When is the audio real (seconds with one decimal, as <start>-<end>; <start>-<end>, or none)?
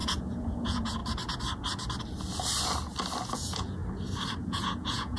1.0-3.3; 3.8-4.4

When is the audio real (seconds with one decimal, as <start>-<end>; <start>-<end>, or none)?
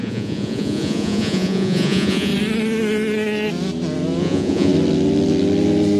2.3-4.2; 4.7-6.0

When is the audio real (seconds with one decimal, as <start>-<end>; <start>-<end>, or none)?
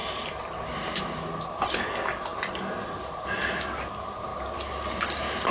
0.0-5.5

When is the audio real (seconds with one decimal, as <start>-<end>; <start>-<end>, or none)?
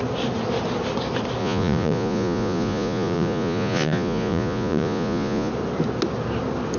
0.0-1.4; 5.5-6.8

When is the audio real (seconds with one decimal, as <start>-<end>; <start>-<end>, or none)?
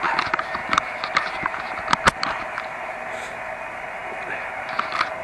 0.0-5.2